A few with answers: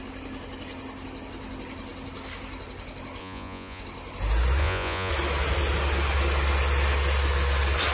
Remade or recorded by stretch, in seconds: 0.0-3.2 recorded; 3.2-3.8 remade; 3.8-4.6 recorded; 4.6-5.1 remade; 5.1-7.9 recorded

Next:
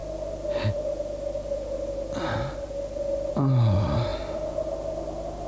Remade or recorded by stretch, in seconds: 0.0-5.5 recorded

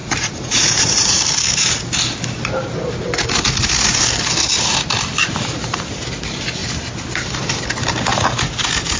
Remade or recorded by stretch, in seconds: 0.0-1.1 remade; 1.1-9.0 recorded

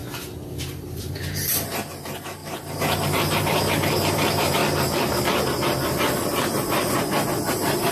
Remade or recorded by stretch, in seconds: 0.0-0.6 recorded; 0.6-2.4 remade; 2.4-3.1 recorded; 3.1-4.6 remade; 4.6-7.5 recorded; 7.5-7.9 remade

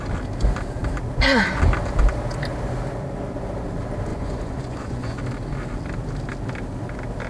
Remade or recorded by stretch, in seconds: 0.0-4.1 recorded; 4.1-5.2 remade; 5.2-7.3 recorded